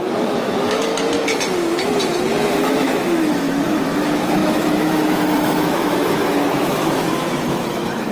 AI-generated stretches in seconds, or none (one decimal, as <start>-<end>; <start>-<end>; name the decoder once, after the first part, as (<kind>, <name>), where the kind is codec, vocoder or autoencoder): 0.0-0.9 (autoencoder, DAC-VAE); 2.5-8.1